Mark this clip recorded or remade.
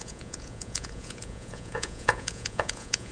remade